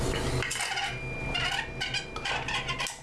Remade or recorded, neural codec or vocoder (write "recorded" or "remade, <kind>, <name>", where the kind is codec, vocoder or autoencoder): recorded